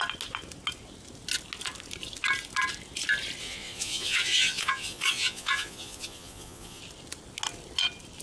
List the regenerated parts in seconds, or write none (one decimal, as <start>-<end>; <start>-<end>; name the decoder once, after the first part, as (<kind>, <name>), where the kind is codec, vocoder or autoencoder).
3.4-6.8 (vocoder, Vocos)